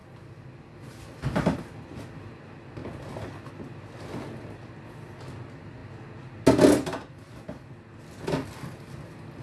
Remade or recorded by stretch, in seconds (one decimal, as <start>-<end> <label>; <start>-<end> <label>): 0.0-9.4 recorded